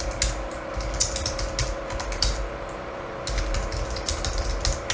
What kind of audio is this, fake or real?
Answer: real